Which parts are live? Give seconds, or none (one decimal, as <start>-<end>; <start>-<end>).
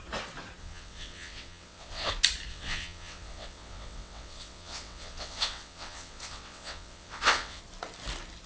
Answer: 0.0-0.6; 2.1-2.5; 7.6-8.5